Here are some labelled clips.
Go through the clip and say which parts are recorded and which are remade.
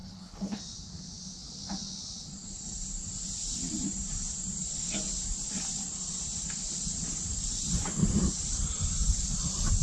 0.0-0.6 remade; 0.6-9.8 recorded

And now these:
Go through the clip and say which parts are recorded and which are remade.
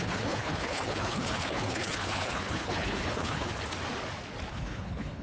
0.0-3.5 remade; 3.5-4.5 recorded; 4.5-5.2 remade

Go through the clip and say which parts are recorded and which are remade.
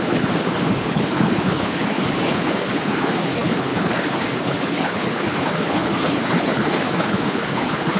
0.0-8.0 remade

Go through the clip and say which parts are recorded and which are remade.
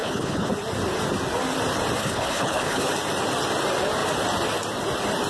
0.0-0.5 remade; 0.5-2.0 recorded; 2.0-2.9 remade; 2.9-5.3 recorded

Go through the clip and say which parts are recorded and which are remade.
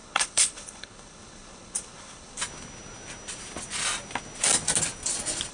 0.0-2.4 remade; 2.4-5.5 recorded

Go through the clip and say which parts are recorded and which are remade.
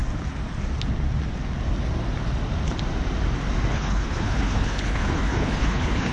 0.0-3.7 recorded; 3.7-6.1 remade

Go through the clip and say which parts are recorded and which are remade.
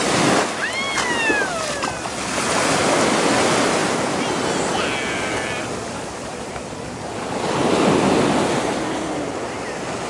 0.0-10.1 recorded